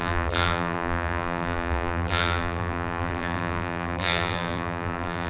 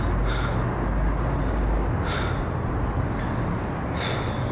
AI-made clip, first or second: first